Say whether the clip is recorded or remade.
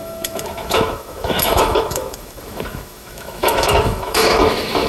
remade